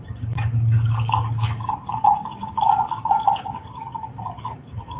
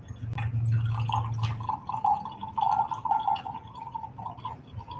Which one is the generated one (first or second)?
first